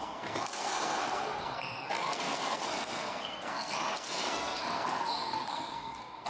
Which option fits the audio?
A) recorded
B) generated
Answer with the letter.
B